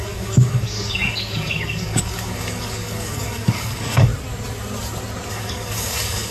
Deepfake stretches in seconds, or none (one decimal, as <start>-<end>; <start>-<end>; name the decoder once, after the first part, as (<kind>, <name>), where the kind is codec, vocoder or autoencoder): 0.0-4.1 (codec, DAC); 5.3-6.3